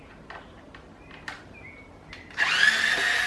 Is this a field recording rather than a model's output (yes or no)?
yes